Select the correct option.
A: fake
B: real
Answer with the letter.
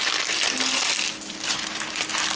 B